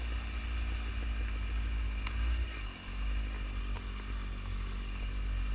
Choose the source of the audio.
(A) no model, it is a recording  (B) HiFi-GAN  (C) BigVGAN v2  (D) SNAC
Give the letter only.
A